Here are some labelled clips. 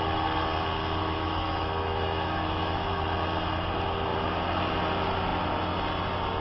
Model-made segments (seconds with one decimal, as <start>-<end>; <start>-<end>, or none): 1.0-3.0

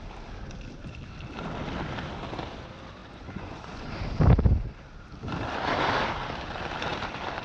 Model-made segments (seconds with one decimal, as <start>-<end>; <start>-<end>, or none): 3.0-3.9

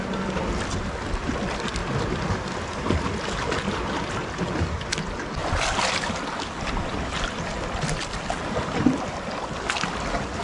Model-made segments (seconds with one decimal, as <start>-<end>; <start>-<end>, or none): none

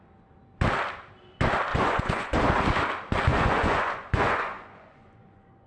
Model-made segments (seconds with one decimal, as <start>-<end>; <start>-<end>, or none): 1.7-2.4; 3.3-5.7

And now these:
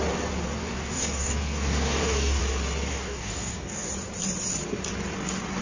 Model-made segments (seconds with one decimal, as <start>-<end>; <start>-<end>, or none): 0.6-2.4; 2.9-3.9

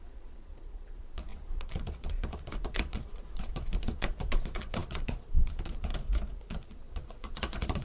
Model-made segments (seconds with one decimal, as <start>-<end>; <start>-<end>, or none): 0.0-5.9; 6.5-7.8